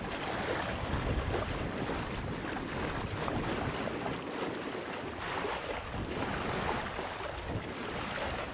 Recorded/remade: recorded